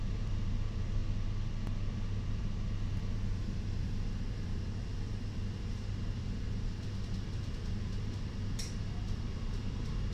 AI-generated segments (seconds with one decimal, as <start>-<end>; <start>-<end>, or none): 0.0-1.0; 1.9-10.1